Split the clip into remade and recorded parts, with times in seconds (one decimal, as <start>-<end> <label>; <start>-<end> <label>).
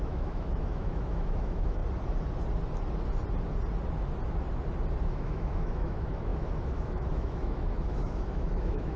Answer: 0.0-1.8 remade; 1.8-5.0 recorded; 5.0-9.0 remade